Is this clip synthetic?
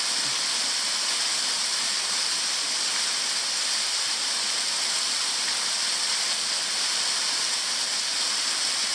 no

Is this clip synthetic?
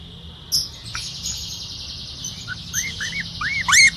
no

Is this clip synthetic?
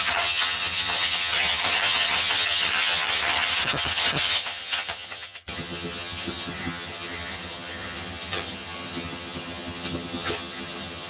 yes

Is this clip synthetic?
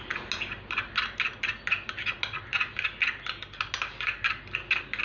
no